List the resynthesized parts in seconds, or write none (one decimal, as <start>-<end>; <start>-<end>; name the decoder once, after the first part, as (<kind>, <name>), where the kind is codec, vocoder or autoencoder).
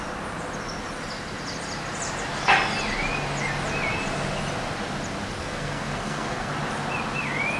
5.4-6.5 (codec, SNAC)